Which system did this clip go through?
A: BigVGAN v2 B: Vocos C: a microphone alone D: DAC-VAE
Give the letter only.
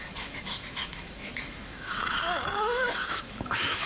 D